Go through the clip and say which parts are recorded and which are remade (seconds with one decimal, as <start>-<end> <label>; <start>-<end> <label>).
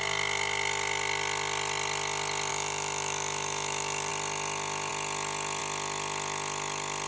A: 0.0-2.5 recorded; 2.5-4.1 remade; 4.1-7.1 recorded